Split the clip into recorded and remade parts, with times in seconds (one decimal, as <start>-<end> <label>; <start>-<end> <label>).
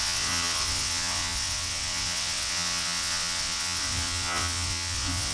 0.0-5.3 remade